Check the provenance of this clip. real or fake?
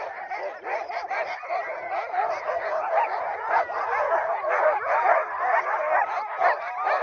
real